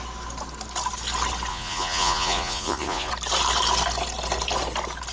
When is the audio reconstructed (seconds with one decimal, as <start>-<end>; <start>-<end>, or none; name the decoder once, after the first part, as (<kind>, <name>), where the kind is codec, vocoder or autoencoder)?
1.5-3.1 (vocoder, Vocos)